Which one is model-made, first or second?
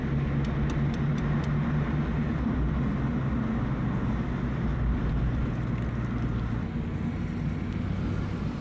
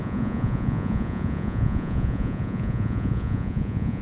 second